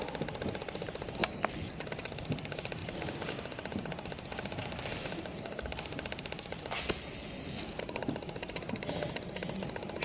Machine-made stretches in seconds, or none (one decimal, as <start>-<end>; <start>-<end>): none